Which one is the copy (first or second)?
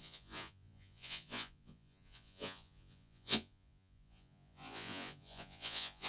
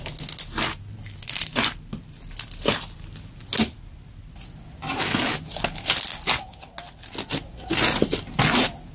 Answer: first